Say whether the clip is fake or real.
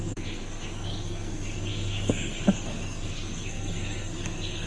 fake